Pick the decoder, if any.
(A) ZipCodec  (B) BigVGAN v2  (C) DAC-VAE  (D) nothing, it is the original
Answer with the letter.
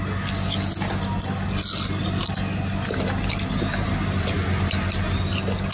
D